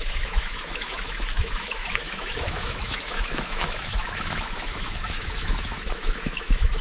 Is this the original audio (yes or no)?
no